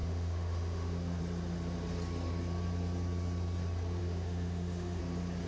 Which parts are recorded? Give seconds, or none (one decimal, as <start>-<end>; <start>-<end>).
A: 1.2-4.0; 5.0-5.5